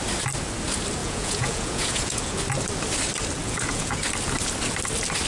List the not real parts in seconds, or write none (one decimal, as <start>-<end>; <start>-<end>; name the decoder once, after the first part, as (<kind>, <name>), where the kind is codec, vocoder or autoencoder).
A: 1.0-2.4 (vocoder, Vocos); 3.4-4.0